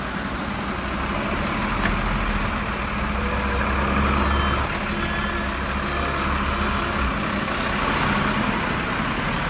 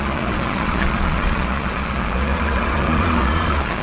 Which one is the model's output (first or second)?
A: second